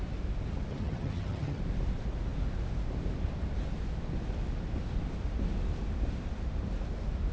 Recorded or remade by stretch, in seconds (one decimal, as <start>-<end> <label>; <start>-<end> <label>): 0.0-0.7 recorded; 0.7-1.6 remade; 1.6-7.3 recorded